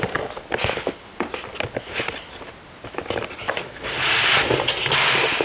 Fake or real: real